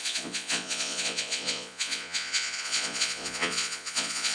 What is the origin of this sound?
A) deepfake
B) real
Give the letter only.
A